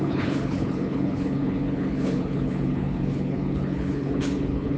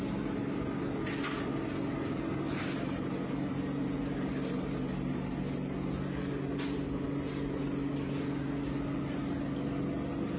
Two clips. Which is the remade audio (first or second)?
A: first